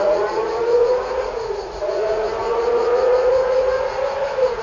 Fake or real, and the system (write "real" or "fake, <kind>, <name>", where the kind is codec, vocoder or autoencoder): fake, vocoder, Vocos